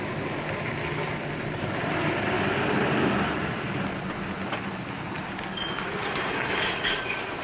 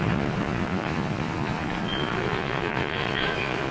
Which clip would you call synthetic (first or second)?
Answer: second